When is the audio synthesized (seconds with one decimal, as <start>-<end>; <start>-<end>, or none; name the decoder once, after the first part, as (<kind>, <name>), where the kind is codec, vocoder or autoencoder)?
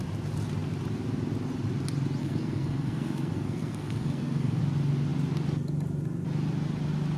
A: 2.2-4.6 (codec, SNAC)